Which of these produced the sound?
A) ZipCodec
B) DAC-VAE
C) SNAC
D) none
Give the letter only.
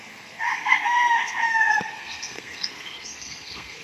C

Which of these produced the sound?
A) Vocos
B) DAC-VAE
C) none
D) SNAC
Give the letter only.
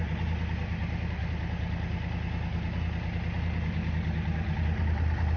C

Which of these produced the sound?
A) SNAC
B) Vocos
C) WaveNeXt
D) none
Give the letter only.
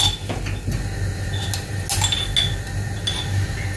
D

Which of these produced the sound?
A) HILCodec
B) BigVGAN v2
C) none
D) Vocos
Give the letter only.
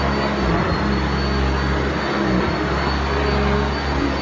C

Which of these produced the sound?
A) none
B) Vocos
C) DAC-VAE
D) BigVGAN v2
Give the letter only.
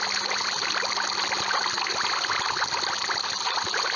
A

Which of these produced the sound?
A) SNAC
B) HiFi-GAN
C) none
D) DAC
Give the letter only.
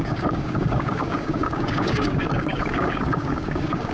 D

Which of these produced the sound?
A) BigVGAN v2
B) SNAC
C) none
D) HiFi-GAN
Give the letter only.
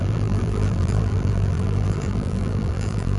A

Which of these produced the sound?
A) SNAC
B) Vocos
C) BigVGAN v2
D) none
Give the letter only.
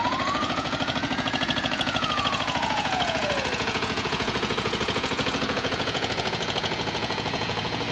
B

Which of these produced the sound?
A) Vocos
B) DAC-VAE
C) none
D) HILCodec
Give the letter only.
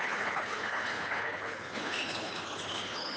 D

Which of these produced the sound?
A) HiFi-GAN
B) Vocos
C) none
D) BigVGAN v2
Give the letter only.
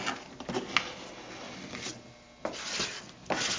C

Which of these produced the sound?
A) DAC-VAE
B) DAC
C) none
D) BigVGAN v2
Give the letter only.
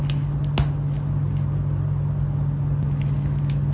C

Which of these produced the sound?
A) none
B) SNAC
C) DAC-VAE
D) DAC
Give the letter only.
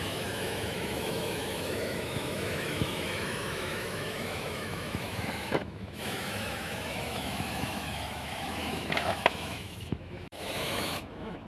C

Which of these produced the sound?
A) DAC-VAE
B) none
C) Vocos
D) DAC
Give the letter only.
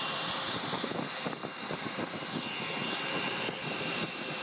B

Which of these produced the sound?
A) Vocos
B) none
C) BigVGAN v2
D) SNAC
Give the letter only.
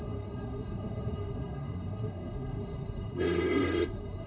D